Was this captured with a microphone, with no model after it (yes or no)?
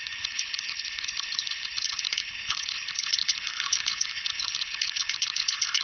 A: no